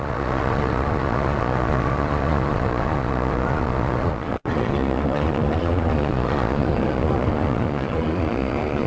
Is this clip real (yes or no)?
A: no